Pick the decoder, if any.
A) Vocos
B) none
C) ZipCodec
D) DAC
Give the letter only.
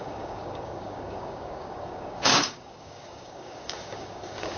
D